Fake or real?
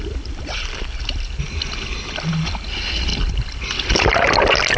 real